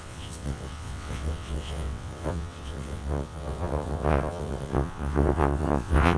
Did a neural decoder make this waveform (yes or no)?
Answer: yes